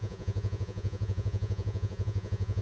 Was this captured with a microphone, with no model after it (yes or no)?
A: no